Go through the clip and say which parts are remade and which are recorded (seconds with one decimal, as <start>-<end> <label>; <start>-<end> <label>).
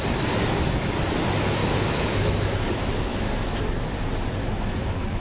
0.0-1.6 recorded; 1.6-2.6 remade; 2.6-3.1 recorded; 3.1-3.6 remade; 3.6-4.4 recorded; 4.4-5.2 remade